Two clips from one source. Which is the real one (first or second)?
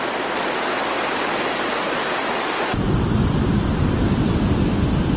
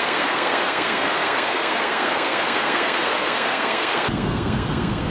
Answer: first